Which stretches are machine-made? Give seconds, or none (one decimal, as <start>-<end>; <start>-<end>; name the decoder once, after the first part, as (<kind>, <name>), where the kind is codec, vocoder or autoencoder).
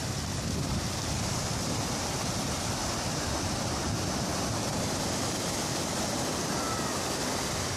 0.0-7.8 (vocoder, BigVGAN v2)